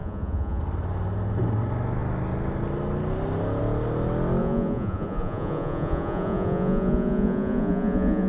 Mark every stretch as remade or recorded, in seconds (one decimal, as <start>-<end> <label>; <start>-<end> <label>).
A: 0.0-0.6 remade; 0.6-4.4 recorded; 4.4-8.3 remade

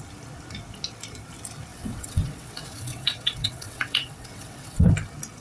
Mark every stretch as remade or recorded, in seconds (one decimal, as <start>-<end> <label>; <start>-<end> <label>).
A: 0.0-1.7 recorded; 1.7-4.9 remade; 4.9-5.4 recorded

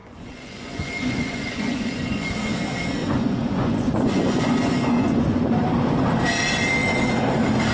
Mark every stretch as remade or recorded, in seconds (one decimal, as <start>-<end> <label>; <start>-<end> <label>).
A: 0.0-2.3 remade; 2.3-3.0 recorded; 3.0-5.4 remade; 5.4-7.7 recorded

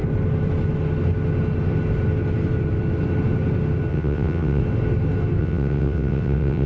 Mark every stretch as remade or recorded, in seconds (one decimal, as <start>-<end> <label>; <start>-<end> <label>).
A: 0.0-3.9 recorded; 3.9-4.6 remade; 4.6-5.4 recorded; 5.4-6.7 remade

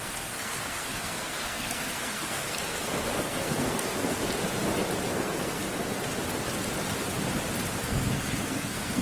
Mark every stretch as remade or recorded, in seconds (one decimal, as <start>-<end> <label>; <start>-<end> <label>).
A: 0.0-4.2 remade; 4.2-5.1 recorded; 5.1-5.6 remade; 5.6-7.8 recorded; 7.8-9.0 remade

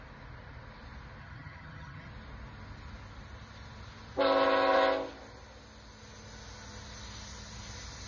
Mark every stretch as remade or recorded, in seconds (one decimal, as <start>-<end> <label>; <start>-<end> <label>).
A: 0.0-1.2 recorded; 1.2-2.1 remade; 2.1-8.1 recorded